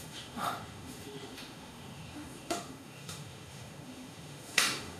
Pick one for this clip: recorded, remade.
remade